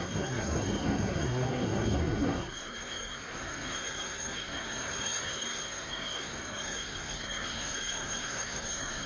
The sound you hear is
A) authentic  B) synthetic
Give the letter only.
B